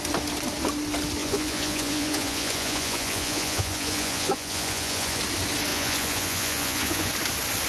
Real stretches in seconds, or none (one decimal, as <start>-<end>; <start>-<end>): 0.0-1.2; 5.2-5.7; 7.1-7.7